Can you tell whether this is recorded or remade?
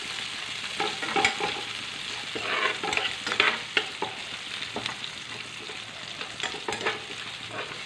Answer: recorded